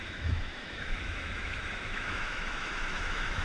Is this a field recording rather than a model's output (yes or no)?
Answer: no